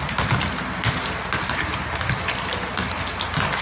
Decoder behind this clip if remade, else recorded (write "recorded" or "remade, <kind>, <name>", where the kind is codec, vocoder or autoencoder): recorded